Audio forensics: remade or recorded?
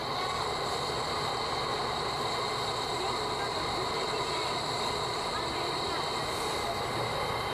recorded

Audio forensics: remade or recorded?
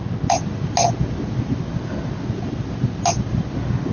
recorded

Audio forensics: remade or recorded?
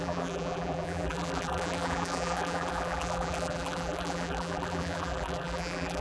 remade